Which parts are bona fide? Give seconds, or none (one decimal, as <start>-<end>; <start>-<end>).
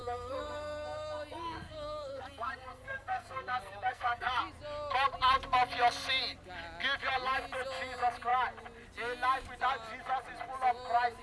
4.4-11.2